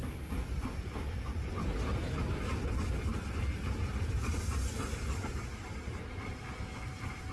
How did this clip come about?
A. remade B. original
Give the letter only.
B